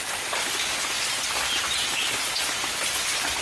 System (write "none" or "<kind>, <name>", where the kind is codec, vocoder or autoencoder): none